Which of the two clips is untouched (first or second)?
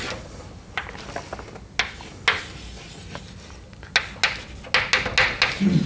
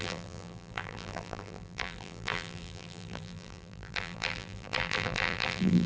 first